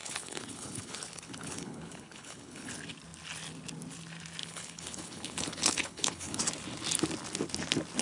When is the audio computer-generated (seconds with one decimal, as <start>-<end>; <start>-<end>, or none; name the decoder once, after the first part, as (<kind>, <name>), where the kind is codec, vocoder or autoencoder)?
0.0-2.7 (codec, HILCodec); 4.4-6.4